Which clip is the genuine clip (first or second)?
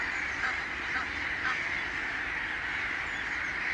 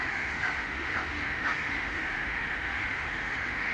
first